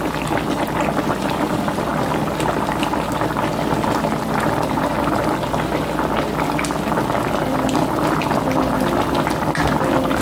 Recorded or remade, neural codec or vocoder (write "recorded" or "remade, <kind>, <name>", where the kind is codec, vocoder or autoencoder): recorded